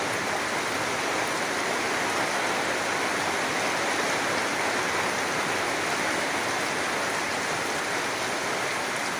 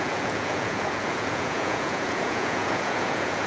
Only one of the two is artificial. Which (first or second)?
second